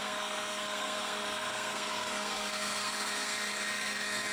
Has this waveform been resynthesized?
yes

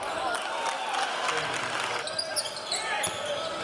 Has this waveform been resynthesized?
no